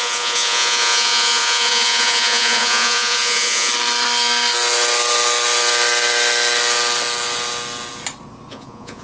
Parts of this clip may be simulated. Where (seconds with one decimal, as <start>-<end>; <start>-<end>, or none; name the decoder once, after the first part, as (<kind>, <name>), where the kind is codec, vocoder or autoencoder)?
0.0-3.7 (vocoder, Vocos); 8.5-9.0